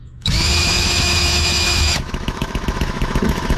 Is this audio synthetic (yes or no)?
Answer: yes